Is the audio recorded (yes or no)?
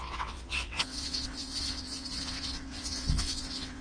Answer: no